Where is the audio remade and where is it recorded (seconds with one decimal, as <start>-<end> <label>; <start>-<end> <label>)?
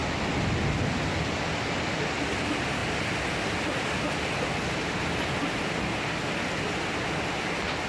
0.0-7.9 recorded